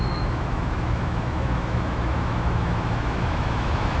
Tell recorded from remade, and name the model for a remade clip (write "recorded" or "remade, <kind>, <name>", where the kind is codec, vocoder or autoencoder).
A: remade, autoencoder, DAC-VAE